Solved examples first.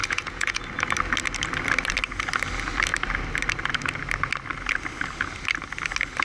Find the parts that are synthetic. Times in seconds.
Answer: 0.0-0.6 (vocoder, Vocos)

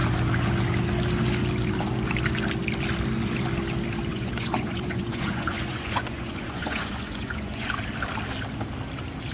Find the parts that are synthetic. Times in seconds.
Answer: 4.1-7.7 (vocoder, Vocos)